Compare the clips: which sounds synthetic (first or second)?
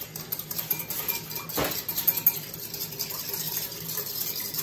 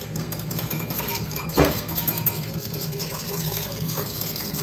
second